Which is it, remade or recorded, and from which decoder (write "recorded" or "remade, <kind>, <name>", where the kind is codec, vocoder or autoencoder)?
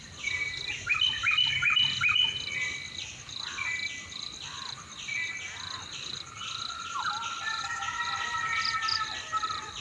recorded